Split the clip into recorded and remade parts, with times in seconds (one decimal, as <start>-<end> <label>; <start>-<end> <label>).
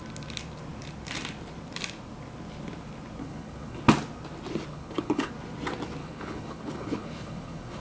0.0-3.2 recorded; 3.2-3.8 remade; 3.8-4.7 recorded; 4.7-5.3 remade; 5.3-6.0 recorded; 6.0-7.8 remade